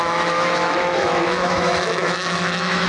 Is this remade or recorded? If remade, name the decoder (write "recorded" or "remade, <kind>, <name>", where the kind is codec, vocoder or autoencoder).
remade, autoencoder, DAC-VAE